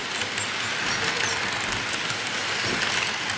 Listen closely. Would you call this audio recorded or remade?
recorded